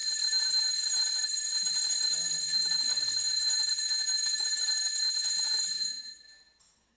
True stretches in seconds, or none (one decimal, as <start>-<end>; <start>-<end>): 0.0-5.2; 6.1-7.0